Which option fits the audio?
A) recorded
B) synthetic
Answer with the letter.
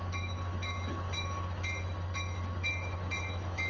B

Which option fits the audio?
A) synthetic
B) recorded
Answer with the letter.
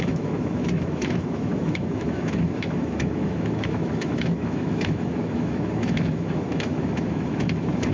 A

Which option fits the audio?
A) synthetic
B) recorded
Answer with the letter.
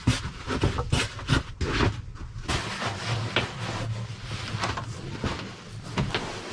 B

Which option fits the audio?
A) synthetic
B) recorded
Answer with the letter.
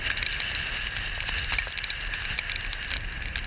B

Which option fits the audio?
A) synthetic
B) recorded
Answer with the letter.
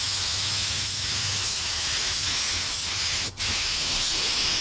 A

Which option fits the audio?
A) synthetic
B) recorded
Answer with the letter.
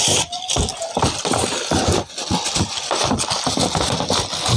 B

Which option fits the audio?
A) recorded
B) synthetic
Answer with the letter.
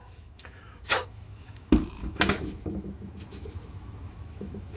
B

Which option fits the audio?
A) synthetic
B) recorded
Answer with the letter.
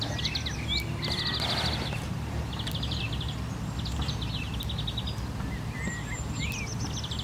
B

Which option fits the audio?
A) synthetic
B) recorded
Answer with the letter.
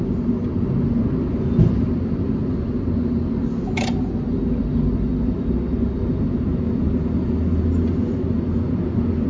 B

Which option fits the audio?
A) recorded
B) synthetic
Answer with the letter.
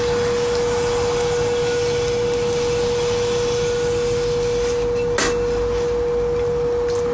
A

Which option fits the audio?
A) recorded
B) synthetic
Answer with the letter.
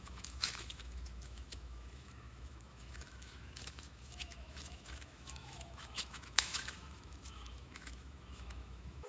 B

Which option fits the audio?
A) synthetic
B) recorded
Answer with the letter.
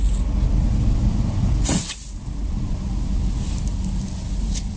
B